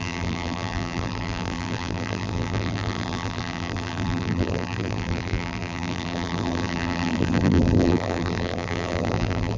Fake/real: fake